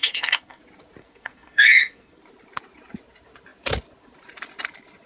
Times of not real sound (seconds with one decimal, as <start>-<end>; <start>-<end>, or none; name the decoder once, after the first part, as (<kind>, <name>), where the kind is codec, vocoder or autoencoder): 0.0-0.6 (codec, SNAC); 1.0-2.2